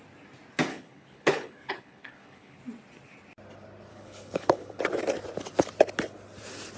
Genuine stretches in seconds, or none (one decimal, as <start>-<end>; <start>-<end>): 0.0-0.7; 2.6-3.9; 4.8-6.8